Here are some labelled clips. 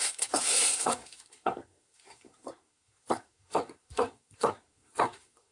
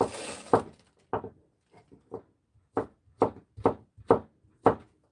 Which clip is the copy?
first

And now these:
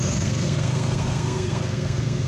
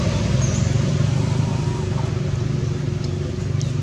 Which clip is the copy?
first